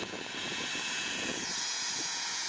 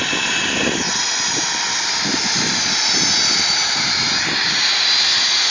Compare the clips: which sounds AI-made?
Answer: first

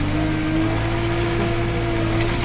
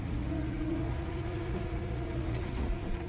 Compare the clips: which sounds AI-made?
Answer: second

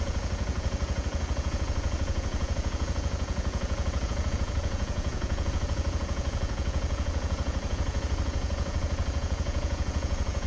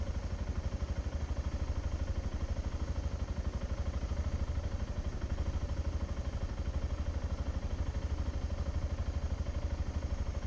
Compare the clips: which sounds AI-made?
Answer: first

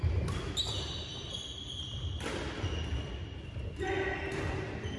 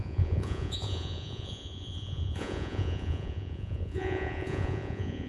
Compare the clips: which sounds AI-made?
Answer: second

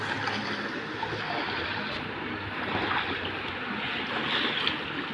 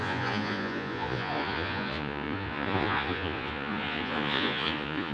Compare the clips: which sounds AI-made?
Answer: second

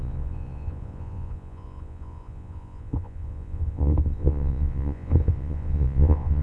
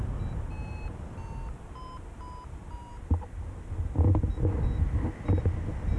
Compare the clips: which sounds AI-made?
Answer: first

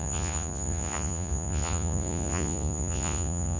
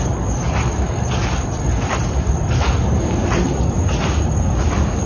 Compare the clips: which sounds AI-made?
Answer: first